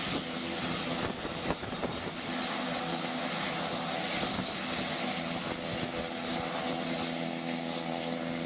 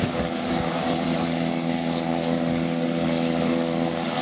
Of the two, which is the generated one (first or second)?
second